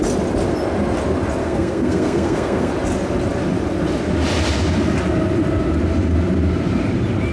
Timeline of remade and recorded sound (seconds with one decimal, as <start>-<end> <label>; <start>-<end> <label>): 0.0-1.4 recorded; 1.4-2.7 remade; 2.7-7.3 recorded